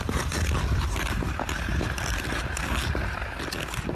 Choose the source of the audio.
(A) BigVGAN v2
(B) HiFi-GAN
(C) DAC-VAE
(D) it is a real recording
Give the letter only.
D